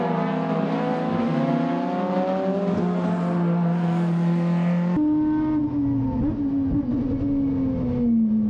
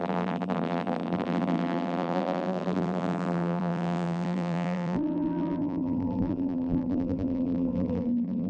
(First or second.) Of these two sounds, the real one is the first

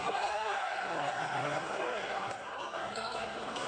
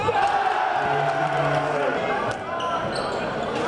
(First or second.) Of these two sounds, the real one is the second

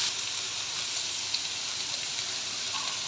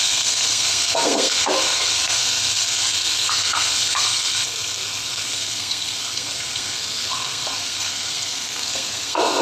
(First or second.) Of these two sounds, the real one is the first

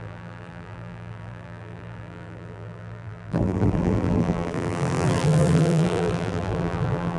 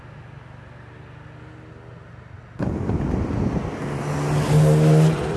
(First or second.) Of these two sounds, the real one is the second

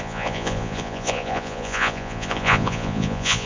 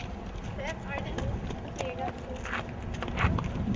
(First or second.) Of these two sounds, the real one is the second